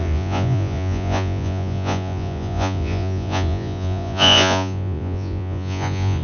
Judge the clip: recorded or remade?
remade